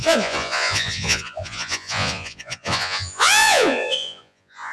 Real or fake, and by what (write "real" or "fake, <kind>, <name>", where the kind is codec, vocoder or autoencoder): fake, vocoder, Vocos